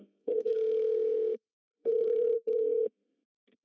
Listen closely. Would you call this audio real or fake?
fake